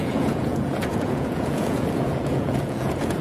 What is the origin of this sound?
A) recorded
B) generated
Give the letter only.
B